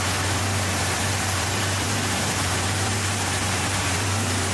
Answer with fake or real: fake